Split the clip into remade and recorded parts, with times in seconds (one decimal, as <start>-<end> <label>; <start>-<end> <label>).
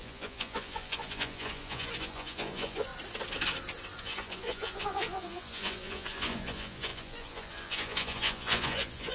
0.0-2.9 remade; 2.9-4.0 recorded; 4.0-9.1 remade